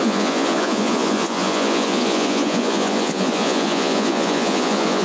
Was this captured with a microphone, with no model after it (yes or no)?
no